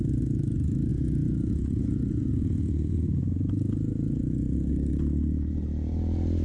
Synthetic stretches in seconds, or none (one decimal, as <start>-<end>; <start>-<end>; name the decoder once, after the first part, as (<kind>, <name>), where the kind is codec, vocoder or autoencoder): 0.9-4.7 (vocoder, Vocos)